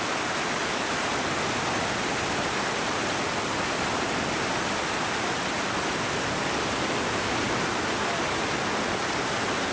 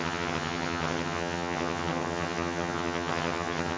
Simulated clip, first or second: second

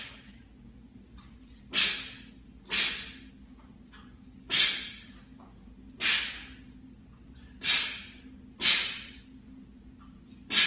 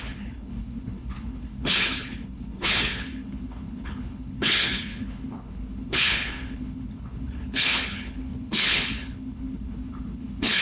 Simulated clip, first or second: second